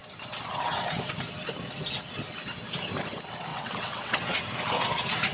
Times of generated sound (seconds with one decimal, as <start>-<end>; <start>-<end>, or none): 3.5-4.4